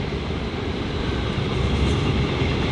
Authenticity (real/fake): real